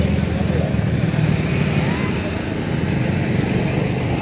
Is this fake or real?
real